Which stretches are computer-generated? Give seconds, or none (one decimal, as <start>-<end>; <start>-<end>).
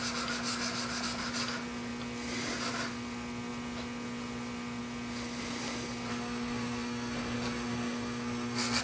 6.1-8.8